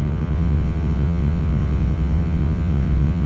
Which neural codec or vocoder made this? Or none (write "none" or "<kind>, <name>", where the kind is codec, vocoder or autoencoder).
vocoder, WaveNeXt